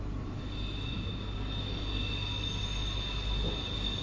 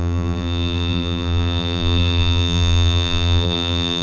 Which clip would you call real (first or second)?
first